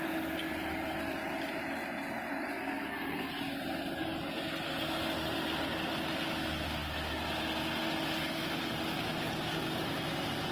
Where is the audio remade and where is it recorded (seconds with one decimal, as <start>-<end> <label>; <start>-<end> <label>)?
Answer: 0.0-2.5 recorded; 2.5-3.3 remade; 3.3-10.5 recorded